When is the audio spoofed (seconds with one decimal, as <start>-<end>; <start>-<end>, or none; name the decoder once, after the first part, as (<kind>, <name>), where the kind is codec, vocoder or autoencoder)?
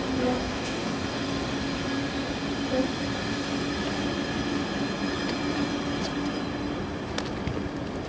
0.4-1.0 (codec, DAC)